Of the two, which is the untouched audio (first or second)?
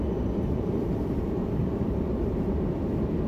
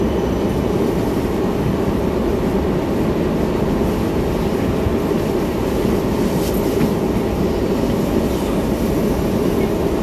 second